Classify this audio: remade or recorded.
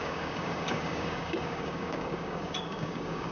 remade